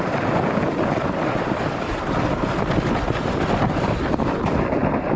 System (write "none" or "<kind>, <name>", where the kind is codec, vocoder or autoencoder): none